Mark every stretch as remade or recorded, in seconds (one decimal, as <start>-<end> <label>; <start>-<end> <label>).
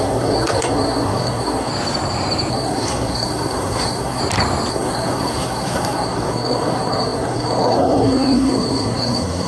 0.0-1.7 remade; 1.7-2.5 recorded; 2.5-4.2 remade; 4.2-4.7 recorded; 4.7-9.5 remade